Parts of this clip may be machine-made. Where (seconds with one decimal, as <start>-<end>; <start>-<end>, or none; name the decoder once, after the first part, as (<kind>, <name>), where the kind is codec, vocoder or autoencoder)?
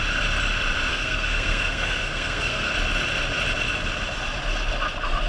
0.9-2.7 (codec, SNAC)